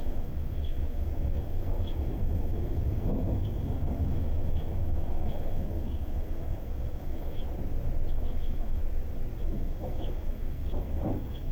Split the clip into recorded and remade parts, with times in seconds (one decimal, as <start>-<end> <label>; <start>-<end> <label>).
0.0-7.4 remade; 7.4-8.1 recorded; 8.1-8.8 remade; 8.8-9.4 recorded; 9.4-11.5 remade